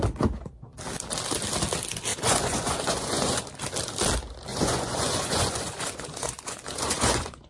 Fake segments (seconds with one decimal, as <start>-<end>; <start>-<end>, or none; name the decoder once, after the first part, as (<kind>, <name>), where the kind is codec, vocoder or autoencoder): 2.1-3.4 (vocoder, Vocos); 4.5-7.5